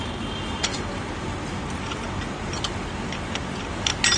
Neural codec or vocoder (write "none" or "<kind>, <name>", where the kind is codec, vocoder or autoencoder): none